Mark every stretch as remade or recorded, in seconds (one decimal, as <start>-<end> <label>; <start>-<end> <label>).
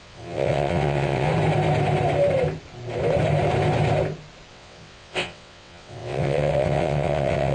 0.0-1.3 remade; 1.3-4.5 recorded; 4.5-7.5 remade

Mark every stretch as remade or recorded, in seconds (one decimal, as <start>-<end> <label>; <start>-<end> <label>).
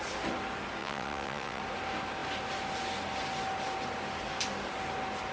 0.0-0.8 recorded; 0.8-1.6 remade; 1.6-5.3 recorded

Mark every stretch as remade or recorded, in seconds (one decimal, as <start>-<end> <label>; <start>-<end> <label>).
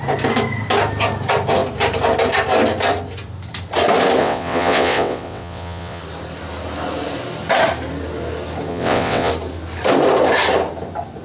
0.0-4.2 recorded; 4.2-6.0 remade; 6.0-8.7 recorded; 8.7-9.3 remade; 9.3-11.2 recorded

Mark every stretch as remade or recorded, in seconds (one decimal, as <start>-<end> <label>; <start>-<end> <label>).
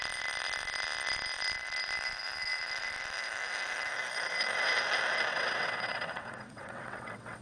0.0-5.3 recorded; 5.3-7.4 remade